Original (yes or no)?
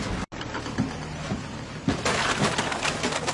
yes